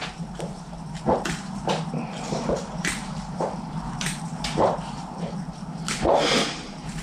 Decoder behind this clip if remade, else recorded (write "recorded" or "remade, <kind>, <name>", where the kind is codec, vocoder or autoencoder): remade, vocoder, BigVGAN v2